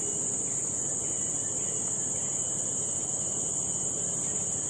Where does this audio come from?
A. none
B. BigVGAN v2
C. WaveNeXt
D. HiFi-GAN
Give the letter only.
A